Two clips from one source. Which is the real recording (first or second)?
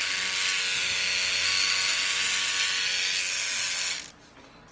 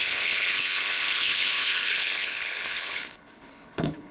first